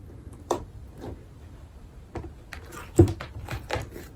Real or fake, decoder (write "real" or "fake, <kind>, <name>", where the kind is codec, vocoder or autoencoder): real